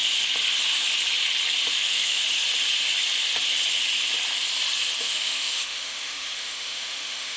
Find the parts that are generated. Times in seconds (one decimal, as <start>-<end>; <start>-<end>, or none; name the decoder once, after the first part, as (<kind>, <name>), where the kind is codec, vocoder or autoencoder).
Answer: 1.7-2.2 (autoencoder, DAC-VAE); 5.0-7.4